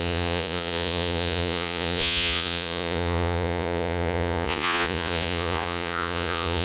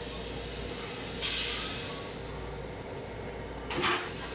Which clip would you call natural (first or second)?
second